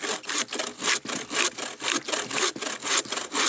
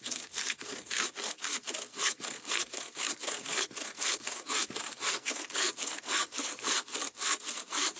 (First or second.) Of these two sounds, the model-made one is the second